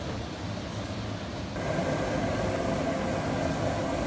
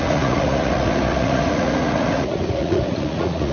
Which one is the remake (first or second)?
second